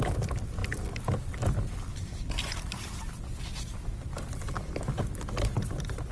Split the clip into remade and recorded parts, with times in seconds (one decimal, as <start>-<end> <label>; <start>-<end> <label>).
0.0-6.1 recorded